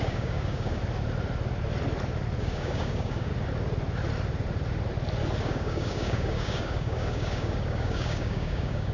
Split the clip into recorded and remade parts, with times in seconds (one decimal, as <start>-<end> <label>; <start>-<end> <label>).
0.0-0.8 remade; 0.8-2.4 recorded; 2.4-3.3 remade; 3.3-5.4 recorded; 5.4-8.9 remade